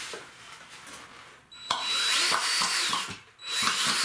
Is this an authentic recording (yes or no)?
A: yes